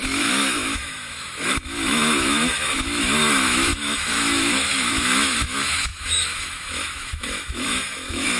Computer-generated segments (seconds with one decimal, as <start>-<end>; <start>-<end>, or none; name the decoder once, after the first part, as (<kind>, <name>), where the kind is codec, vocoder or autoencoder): 0.0-8.4 (autoencoder, DAC-VAE)